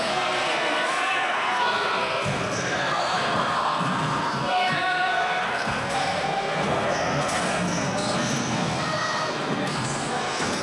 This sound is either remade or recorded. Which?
remade